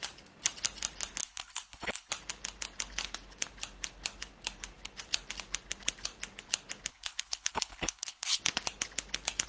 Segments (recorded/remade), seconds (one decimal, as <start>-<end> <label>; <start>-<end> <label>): 0.0-1.2 recorded; 1.2-2.1 remade; 2.1-6.9 recorded; 6.9-8.4 remade; 8.4-9.5 recorded